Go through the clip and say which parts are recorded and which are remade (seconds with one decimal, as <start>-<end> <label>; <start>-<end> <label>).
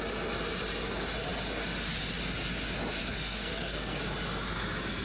0.0-3.0 recorded; 3.0-4.0 remade; 4.0-5.0 recorded